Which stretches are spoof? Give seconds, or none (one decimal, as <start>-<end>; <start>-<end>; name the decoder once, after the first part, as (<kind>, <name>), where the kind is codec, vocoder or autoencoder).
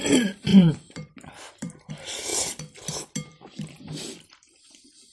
0.5-1.9 (vocoder, BigVGAN v2); 3.3-5.1